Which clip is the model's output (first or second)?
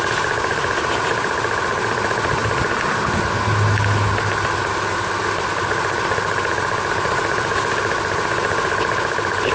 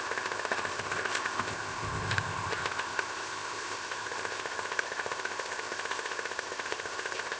second